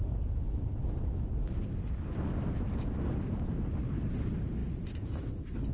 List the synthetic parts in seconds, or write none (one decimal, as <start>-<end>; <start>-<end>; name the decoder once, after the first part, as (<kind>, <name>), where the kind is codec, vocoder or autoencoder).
4.6-5.2 (vocoder, BigVGAN v2)